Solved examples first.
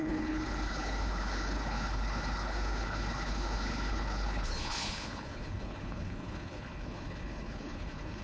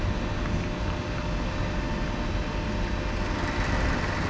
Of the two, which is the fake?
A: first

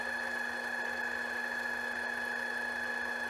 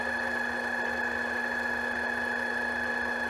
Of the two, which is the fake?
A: second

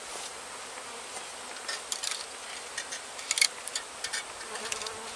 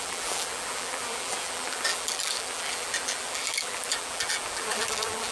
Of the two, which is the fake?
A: second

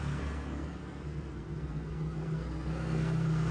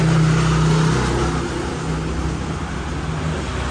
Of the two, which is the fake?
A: first